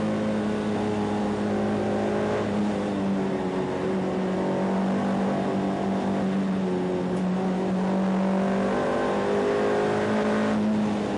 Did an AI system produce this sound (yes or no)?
no